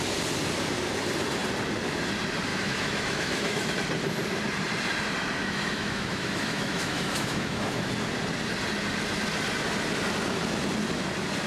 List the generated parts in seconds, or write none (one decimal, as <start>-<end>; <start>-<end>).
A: 2.5-3.7; 5.4-7.9